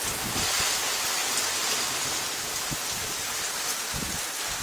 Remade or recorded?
recorded